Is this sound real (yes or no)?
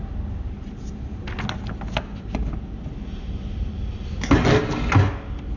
yes